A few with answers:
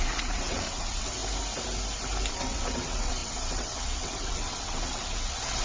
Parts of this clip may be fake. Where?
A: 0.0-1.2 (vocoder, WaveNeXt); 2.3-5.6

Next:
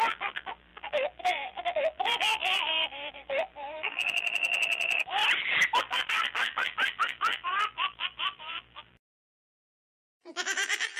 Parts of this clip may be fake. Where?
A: 0.0-5.2 (vocoder, BigVGAN v2); 5.8-11.0

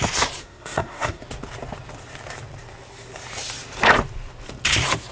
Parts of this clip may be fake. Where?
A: 0.4-1.2 (codec, SNAC)

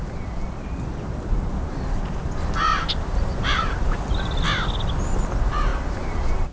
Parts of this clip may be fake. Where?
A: 2.7-4.1 (vocoder, BigVGAN v2); 5.7-6.5

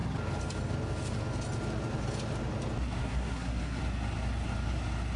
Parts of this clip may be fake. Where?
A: 3.0-3.8 (codec, SNAC)

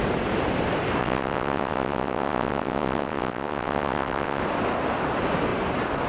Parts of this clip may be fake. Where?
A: 1.0-4.4 (vocoder, WaveNeXt)

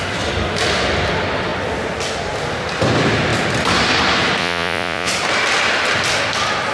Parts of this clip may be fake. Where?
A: 4.4-5.1 (vocoder, Vocos)

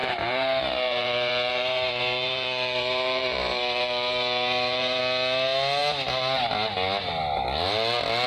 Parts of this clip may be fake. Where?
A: 0.0-5.0 (vocoder, BigVGAN v2)